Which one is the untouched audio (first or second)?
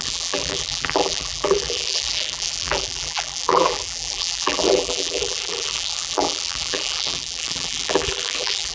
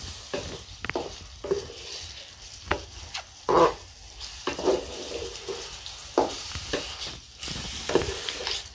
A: second